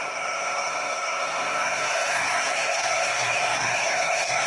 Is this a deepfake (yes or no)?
yes